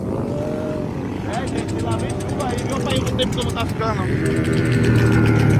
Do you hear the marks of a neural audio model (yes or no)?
no